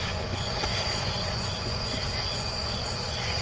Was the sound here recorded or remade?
remade